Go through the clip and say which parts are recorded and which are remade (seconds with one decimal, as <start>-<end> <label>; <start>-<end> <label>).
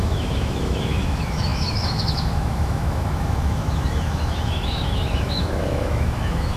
0.0-6.6 remade